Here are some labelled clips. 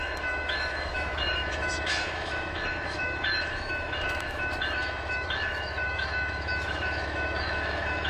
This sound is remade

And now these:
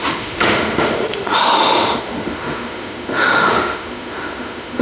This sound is remade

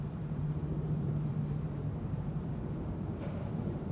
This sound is remade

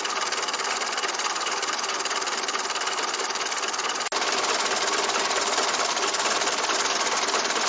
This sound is recorded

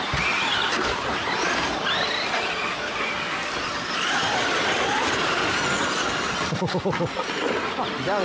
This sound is recorded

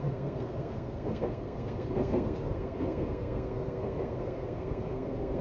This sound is remade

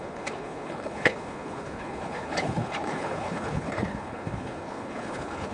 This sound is remade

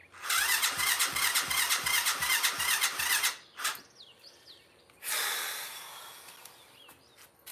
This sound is recorded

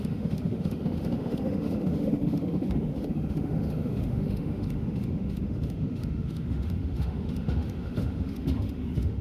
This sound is remade